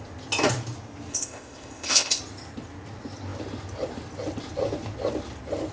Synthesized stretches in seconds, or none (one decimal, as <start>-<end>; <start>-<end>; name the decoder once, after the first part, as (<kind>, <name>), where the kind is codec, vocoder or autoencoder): 1.1-2.2 (codec, ZipCodec)